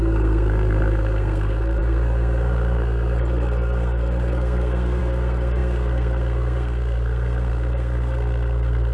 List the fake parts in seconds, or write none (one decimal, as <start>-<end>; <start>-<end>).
0.0-8.9